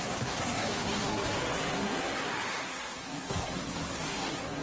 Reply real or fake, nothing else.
fake